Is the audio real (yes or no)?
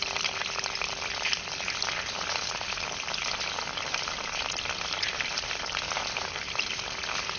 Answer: yes